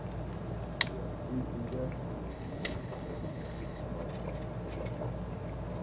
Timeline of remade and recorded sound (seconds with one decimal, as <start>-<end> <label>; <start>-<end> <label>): 0.0-2.3 recorded; 2.3-3.8 remade; 3.8-5.8 recorded